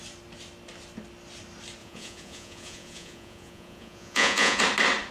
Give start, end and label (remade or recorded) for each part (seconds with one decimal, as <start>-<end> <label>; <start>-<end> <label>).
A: 0.0-1.8 recorded; 1.8-4.6 remade; 4.6-5.1 recorded